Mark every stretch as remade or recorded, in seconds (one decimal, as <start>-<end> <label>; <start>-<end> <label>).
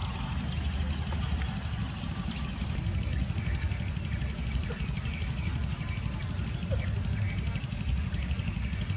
0.0-9.0 recorded